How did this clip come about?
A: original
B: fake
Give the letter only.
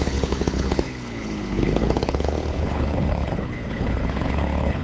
B